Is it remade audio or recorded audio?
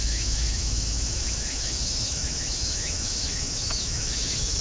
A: remade